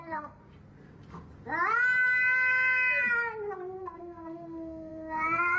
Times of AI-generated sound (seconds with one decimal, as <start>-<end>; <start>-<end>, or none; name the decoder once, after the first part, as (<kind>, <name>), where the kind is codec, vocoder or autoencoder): 0.0-0.4 (codec, SNAC); 3.8-5.6